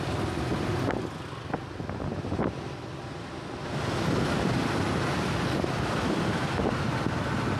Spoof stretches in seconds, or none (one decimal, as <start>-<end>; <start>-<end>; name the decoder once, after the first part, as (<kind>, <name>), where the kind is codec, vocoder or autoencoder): none